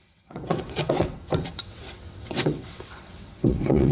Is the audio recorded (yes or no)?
no